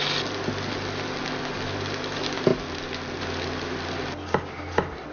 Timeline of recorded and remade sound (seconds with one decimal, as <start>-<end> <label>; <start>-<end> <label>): 0.0-5.1 recorded